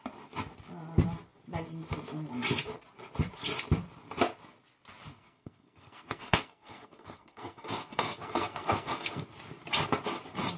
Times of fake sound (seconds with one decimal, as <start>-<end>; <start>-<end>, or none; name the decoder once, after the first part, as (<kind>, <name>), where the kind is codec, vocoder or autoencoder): 5.1-9.2 (codec, SNAC)